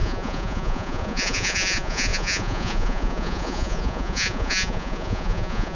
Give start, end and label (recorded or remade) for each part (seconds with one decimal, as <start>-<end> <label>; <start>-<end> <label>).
0.0-5.8 remade